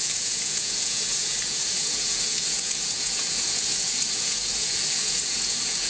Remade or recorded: remade